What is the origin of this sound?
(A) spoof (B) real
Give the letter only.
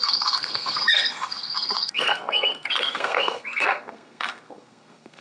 A